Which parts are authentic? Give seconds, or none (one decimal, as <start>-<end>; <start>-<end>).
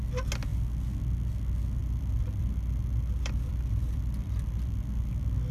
0.0-1.8; 5.1-5.5